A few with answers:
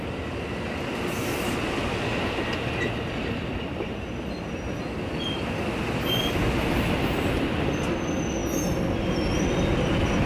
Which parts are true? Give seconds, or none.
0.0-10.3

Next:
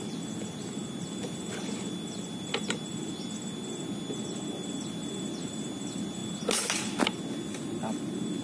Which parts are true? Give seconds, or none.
0.0-8.4

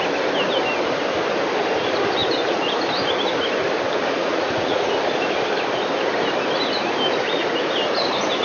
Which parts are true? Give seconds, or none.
0.0-4.2; 4.9-8.4

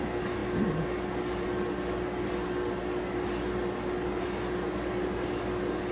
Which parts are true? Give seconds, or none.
0.0-5.9

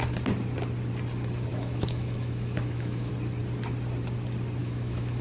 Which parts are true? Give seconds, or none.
0.0-1.5; 3.1-4.6

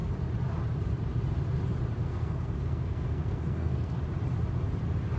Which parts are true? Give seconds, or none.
0.0-2.0; 4.0-5.2

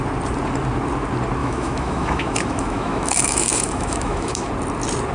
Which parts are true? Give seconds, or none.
0.0-1.4; 4.5-5.1